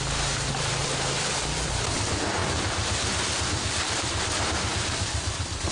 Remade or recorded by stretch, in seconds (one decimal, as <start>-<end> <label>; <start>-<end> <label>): 0.0-5.7 recorded

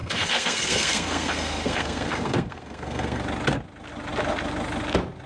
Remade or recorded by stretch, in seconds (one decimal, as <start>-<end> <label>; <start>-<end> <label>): 0.0-3.2 remade; 3.2-5.3 recorded

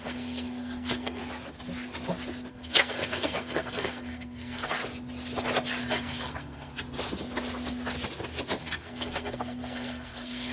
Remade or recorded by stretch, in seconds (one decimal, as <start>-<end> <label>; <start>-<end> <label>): 0.0-1.2 remade; 1.2-2.5 recorded; 2.5-4.8 remade; 4.8-5.8 recorded; 5.8-6.7 remade; 6.7-8.6 recorded; 8.6-10.5 remade

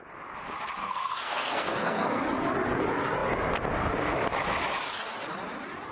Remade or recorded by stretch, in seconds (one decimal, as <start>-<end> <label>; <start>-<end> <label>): 0.0-0.8 recorded; 0.8-2.2 remade; 2.2-5.9 recorded